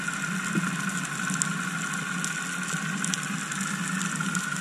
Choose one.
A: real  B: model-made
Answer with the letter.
A